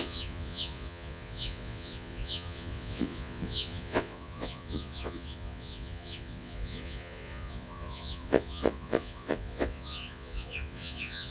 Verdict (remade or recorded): remade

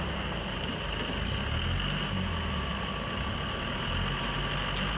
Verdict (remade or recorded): recorded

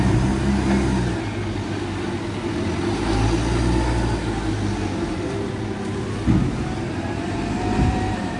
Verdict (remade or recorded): recorded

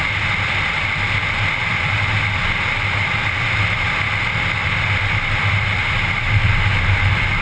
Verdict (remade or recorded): recorded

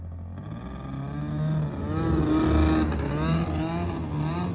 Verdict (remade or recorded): recorded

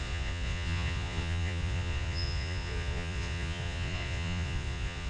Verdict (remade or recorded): remade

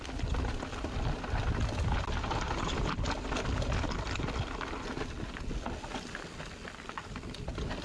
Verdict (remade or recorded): recorded